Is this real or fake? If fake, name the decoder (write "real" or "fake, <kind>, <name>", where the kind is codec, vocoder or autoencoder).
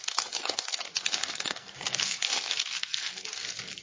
fake, codec, SNAC